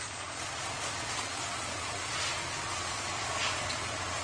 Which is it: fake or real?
fake